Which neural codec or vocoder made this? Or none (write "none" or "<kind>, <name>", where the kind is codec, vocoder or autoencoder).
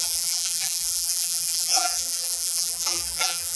vocoder, BigVGAN v2